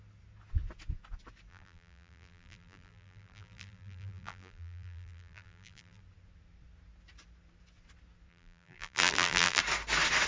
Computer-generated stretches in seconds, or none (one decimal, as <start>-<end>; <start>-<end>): 1.5-6.0; 8.3-9.6

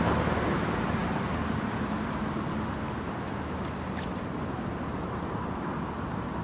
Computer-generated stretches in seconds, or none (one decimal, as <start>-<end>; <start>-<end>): none

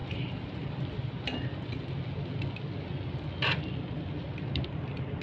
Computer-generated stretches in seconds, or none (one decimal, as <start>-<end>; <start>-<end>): none